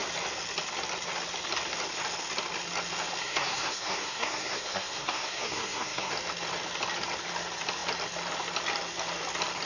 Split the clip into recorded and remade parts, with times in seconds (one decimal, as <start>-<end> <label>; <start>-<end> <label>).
0.0-3.2 recorded; 3.2-6.1 remade; 6.1-9.7 recorded